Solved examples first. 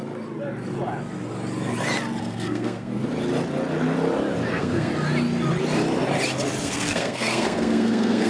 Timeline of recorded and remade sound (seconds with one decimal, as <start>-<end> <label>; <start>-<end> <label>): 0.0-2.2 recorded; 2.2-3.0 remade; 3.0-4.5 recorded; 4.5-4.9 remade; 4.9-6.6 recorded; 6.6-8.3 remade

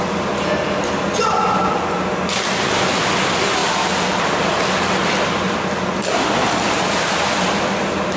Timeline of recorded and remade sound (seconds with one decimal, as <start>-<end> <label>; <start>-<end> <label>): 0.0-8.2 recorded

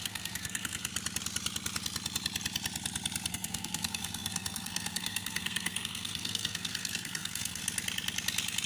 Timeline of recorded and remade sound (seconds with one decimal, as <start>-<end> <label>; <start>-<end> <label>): 0.0-0.9 remade; 0.9-3.3 recorded; 3.3-7.6 remade; 7.6-8.7 recorded

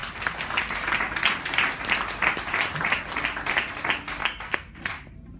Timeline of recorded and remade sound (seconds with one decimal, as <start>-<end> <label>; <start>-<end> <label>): 0.0-4.2 recorded; 4.2-4.8 remade; 4.8-5.4 recorded